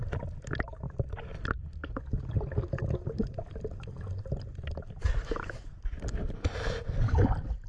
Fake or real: real